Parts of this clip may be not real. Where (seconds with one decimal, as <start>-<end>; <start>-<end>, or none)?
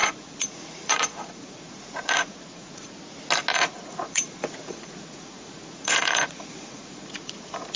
0.0-2.9; 3.5-7.8